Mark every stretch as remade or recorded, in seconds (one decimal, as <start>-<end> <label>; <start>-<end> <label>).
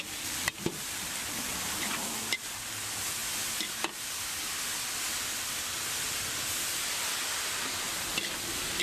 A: 0.0-8.8 recorded